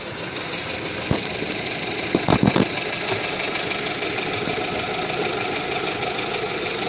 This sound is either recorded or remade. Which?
recorded